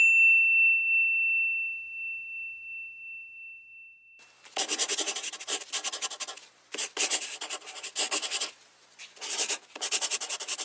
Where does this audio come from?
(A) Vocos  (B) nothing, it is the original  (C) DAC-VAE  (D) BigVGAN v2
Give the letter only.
B